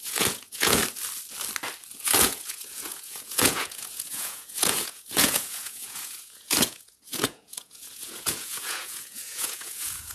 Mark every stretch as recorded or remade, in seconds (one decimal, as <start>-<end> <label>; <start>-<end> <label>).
0.0-0.8 remade; 0.8-2.0 recorded; 2.0-10.1 remade